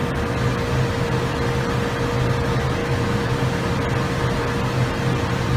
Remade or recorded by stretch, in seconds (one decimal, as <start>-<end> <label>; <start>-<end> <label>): 0.0-2.8 recorded; 2.8-3.4 remade; 3.4-5.6 recorded